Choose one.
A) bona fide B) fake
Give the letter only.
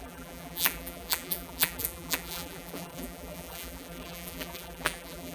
B